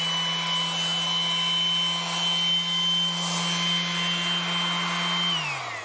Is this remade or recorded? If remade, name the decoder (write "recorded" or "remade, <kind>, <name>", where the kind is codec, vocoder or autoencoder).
recorded